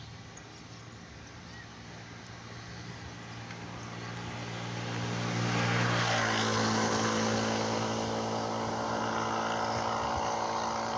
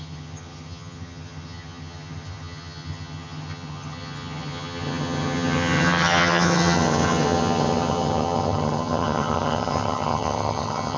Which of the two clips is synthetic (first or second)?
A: second